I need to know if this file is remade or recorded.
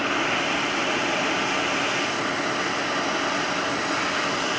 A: recorded